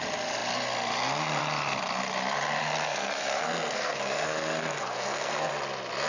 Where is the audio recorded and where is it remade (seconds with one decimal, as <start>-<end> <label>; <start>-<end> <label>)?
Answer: 0.0-2.6 recorded; 2.6-5.5 remade; 5.5-6.1 recorded